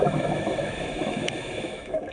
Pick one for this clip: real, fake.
fake